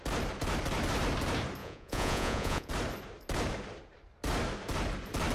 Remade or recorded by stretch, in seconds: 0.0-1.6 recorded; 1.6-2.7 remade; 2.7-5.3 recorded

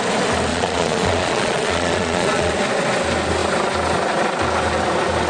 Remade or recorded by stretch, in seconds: 0.0-0.5 recorded; 0.5-2.5 remade; 2.5-5.3 recorded

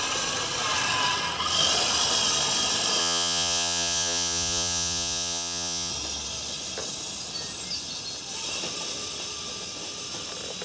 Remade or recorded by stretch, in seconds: 0.0-3.0 recorded; 3.0-5.9 remade; 5.9-10.6 recorded

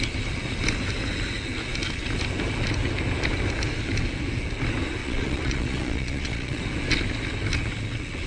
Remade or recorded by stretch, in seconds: 0.0-5.0 recorded; 5.0-6.6 remade; 6.6-8.3 recorded

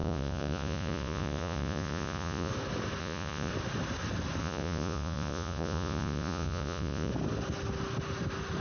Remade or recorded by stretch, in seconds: 0.0-2.5 remade; 2.5-3.0 recorded; 3.0-3.5 remade; 3.5-4.4 recorded; 4.4-7.1 remade; 7.1-8.6 recorded